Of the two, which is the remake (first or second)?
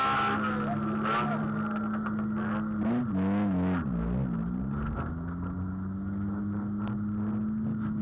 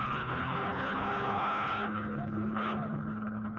second